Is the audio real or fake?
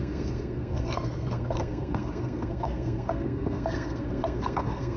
fake